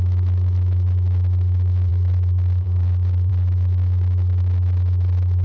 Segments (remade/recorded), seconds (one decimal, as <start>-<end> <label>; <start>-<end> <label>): 0.0-5.4 recorded